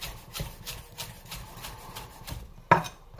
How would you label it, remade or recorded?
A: recorded